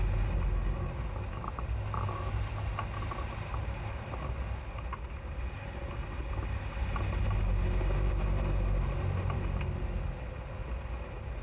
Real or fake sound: real